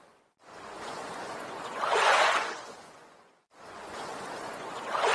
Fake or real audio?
fake